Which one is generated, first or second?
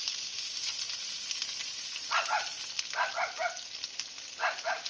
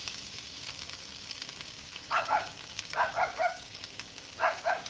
second